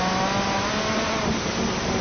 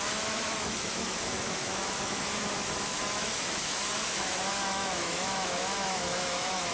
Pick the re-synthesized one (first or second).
second